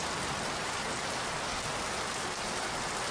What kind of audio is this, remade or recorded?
recorded